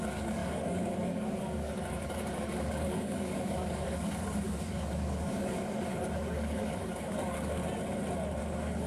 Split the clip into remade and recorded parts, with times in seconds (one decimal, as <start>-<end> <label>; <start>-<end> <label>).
0.0-7.6 remade; 7.6-8.4 recorded; 8.4-8.9 remade